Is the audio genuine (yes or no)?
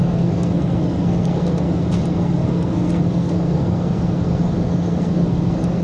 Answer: no